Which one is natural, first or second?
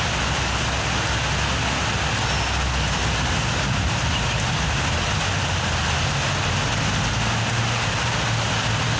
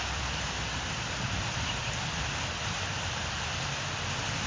first